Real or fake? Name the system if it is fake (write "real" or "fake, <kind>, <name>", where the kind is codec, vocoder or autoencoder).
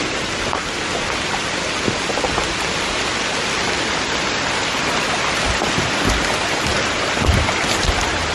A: real